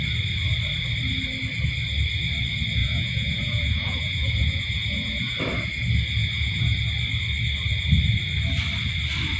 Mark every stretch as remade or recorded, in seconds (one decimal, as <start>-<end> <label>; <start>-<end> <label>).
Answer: 0.0-2.8 recorded; 2.8-5.4 remade; 5.4-6.2 recorded; 6.2-6.8 remade; 6.8-9.4 recorded